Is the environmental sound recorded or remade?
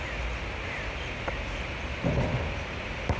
recorded